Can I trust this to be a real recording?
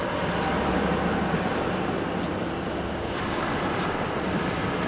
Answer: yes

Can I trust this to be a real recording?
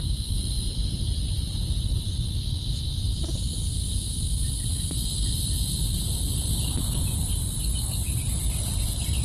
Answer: yes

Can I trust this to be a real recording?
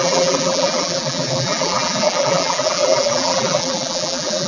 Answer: no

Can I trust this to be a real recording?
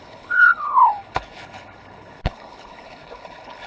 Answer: no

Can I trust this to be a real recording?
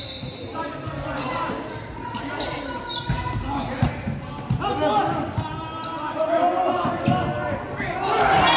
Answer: yes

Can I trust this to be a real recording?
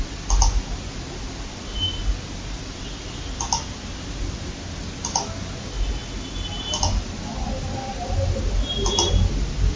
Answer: yes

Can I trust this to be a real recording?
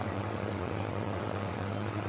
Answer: no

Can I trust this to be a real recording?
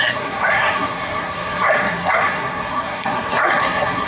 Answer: no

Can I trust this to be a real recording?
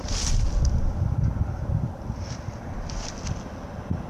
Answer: yes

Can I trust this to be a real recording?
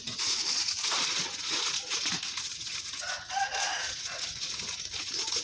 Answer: no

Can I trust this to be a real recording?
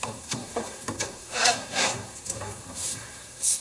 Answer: no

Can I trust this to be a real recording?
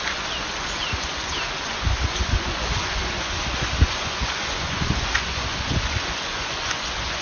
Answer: no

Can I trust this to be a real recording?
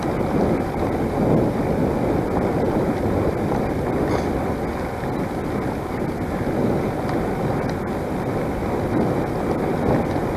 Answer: yes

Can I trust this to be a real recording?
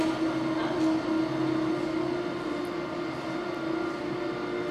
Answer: yes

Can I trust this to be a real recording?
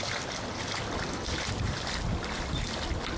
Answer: yes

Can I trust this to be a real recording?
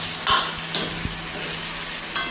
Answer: yes